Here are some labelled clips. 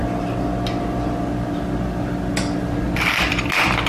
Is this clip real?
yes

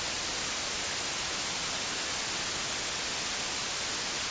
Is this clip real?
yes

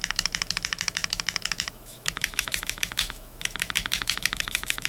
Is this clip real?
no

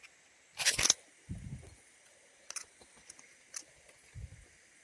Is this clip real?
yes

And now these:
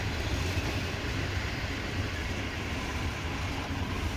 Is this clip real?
yes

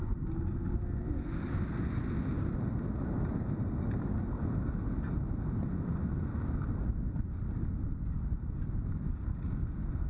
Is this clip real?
yes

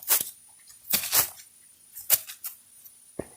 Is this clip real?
yes